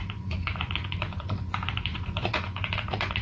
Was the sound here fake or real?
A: fake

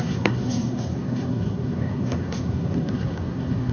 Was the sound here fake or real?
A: fake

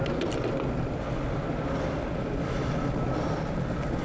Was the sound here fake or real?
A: real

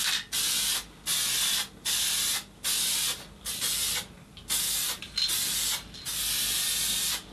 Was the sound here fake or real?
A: real